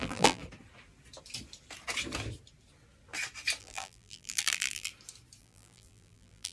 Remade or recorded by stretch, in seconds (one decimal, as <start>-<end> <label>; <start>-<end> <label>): 0.0-0.4 remade; 0.4-3.6 recorded; 3.6-4.9 remade; 4.9-5.4 recorded; 5.4-6.5 remade